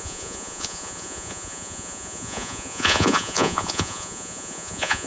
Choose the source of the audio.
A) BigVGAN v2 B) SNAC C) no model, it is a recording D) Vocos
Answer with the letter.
D